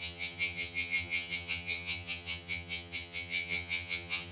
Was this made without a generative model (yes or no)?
no